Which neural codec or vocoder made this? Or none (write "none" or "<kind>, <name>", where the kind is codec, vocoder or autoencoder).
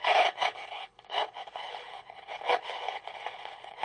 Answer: codec, HILCodec